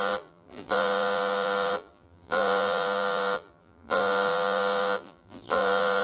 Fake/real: fake